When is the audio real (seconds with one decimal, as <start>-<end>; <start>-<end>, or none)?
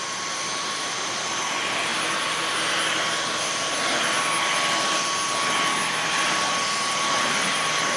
1.9-6.3